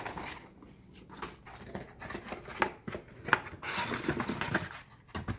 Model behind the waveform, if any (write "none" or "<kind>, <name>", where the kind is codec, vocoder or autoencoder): none